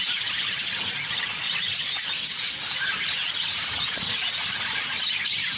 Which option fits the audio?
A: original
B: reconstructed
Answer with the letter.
A